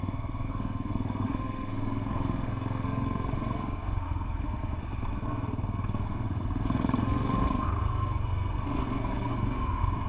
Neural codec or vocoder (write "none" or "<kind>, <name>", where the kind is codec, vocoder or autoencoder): codec, SNAC